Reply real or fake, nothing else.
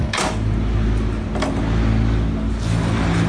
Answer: real